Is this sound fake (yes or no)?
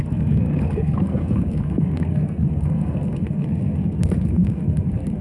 yes